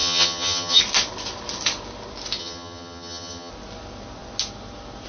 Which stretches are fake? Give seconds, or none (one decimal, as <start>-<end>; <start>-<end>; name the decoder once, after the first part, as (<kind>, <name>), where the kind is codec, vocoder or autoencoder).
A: 0.0-0.8 (vocoder, HiFi-GAN); 2.4-3.5